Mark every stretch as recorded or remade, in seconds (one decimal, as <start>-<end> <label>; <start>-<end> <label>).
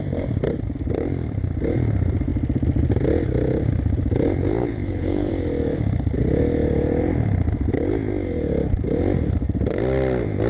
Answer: 0.0-4.6 recorded; 4.6-5.3 remade; 5.3-10.5 recorded